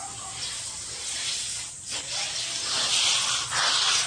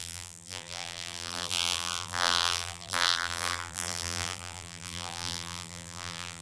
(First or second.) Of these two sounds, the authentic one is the first